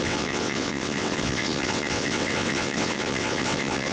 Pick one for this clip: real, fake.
fake